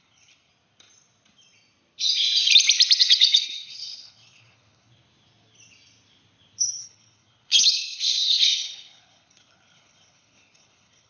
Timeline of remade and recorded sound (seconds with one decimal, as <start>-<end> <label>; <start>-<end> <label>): 0.0-0.5 remade; 0.5-3.0 recorded; 3.0-4.9 remade; 4.9-6.8 recorded; 6.8-11.1 remade